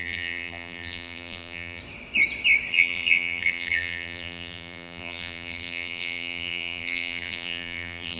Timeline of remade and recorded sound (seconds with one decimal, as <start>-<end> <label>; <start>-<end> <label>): 0.0-1.8 remade; 1.8-2.7 recorded; 2.7-8.2 remade